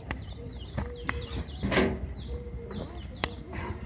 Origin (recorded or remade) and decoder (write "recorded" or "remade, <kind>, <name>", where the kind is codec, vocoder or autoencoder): remade, vocoder, BigVGAN v2